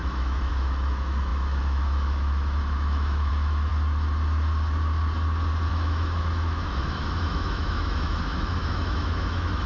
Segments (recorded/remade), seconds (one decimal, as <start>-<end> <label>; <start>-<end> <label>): 0.0-3.7 remade; 3.7-5.7 recorded; 5.7-9.7 remade